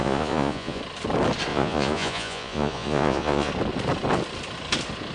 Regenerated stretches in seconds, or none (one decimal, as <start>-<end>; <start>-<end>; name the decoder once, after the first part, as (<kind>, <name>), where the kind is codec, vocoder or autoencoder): 0.0-0.8 (vocoder, Vocos); 1.5-3.5